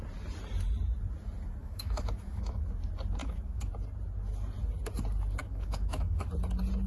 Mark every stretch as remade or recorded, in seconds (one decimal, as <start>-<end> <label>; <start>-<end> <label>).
0.0-1.6 recorded; 1.6-2.6 remade; 2.6-3.2 recorded; 3.2-3.7 remade; 3.7-5.4 recorded; 5.4-6.3 remade; 6.3-6.9 recorded